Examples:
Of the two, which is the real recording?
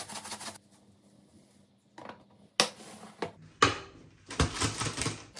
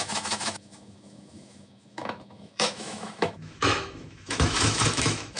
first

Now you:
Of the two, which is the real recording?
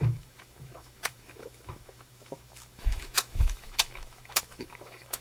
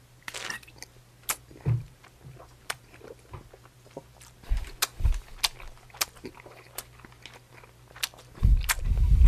second